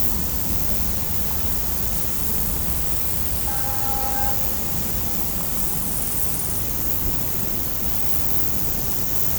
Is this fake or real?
real